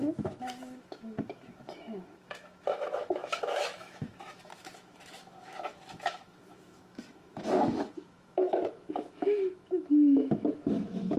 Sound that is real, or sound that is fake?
fake